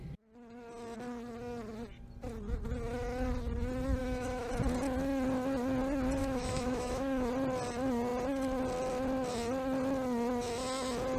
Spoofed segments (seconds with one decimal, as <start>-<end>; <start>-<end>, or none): 4.0-4.5; 6.2-7.3